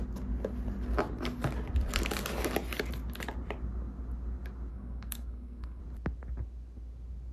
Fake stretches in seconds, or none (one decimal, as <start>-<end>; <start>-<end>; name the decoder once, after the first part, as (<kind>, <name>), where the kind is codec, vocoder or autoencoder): 4.7-5.8 (codec, SNAC)